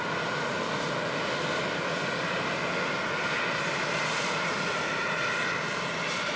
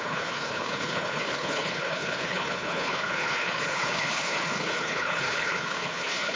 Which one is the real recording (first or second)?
first